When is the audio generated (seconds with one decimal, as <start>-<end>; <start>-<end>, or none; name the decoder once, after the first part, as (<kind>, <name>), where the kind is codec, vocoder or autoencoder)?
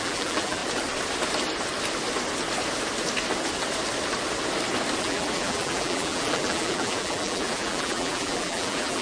0.0-0.6 (vocoder, BigVGAN v2); 5.0-9.0